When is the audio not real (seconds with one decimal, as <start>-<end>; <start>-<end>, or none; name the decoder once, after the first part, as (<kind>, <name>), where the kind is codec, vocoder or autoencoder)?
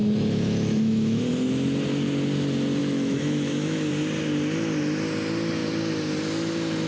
0.0-1.2 (autoencoder, DAC-VAE); 2.8-3.9